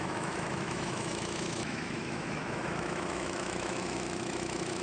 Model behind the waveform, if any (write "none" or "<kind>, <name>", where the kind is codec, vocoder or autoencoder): autoencoder, DAC-VAE